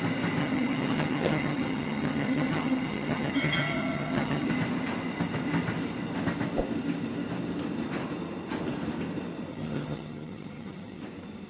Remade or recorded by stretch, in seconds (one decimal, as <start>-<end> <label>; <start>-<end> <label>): 0.0-0.4 recorded; 0.4-4.5 remade; 4.5-9.5 recorded; 9.5-11.0 remade; 11.0-11.5 recorded